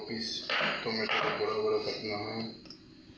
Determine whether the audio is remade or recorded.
recorded